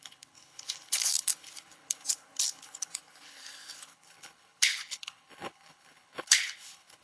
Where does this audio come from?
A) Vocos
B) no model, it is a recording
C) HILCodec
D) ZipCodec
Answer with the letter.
C